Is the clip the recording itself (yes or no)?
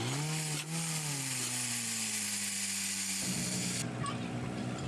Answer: yes